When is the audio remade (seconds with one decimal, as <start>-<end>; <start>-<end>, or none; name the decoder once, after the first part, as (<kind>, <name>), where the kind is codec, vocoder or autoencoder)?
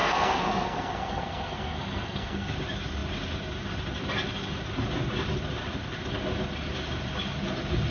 0.0-2.5 (codec, SNAC)